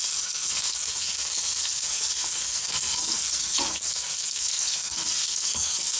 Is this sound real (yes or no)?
no